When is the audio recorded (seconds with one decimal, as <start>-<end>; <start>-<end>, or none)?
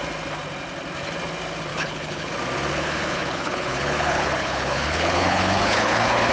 0.0-1.7; 2.3-2.7